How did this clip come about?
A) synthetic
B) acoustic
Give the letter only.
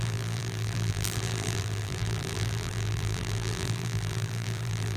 A